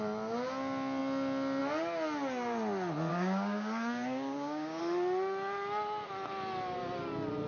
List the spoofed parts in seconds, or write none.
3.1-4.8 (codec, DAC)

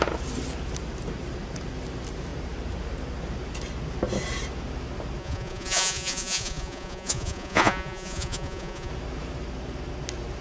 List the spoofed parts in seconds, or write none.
5.2-8.9 (vocoder, Vocos)

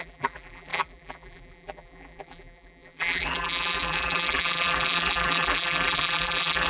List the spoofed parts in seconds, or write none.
0.0-6.7 (vocoder, BigVGAN v2)

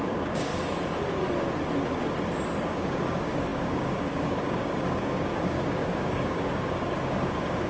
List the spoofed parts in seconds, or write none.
0.0-0.5 (codec, DAC); 2.6-7.7

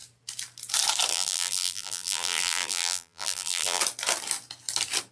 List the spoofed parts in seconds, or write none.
1.1-3.8 (vocoder, BigVGAN v2)

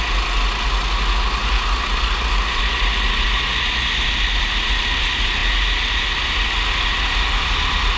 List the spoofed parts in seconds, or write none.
none

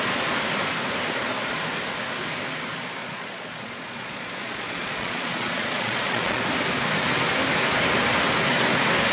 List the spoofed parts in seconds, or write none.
3.0-6.4 (vocoder, Vocos)